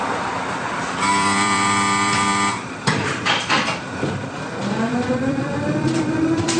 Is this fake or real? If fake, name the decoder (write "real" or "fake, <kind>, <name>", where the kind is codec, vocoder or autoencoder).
fake, vocoder, BigVGAN v2